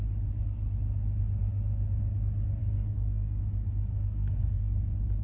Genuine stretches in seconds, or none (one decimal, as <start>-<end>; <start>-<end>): 0.0-2.6; 3.4-3.9; 4.7-5.2